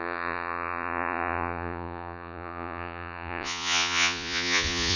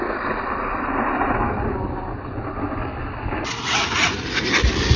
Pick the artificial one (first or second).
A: first